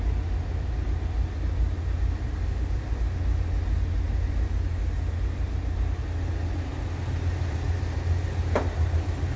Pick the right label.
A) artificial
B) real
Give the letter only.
B